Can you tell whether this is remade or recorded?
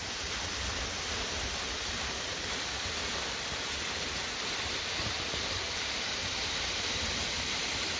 recorded